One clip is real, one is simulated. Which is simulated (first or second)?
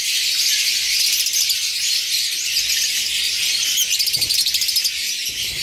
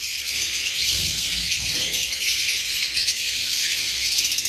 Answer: second